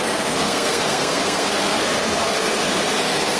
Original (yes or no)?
no